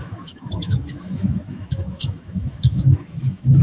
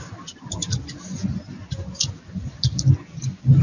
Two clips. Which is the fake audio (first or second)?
first